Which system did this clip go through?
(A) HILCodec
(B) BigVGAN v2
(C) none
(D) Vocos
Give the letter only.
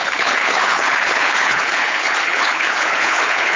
A